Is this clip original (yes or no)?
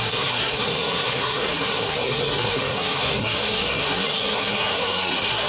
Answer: no